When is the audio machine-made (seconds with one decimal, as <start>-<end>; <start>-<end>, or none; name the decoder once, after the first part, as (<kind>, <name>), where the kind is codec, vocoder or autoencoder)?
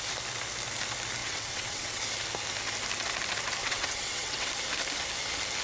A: 1.2-2.0 (vocoder, WaveNeXt); 3.6-4.5